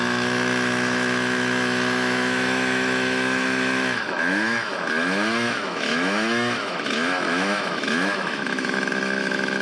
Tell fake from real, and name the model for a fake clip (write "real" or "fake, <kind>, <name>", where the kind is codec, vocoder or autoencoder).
fake, autoencoder, DAC-VAE